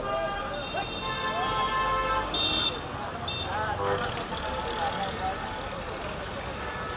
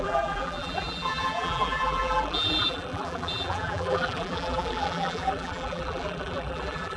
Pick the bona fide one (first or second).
first